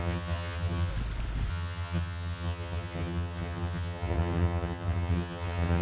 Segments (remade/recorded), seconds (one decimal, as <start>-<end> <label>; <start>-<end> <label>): 0.0-0.9 remade; 0.9-1.5 recorded; 1.5-5.8 remade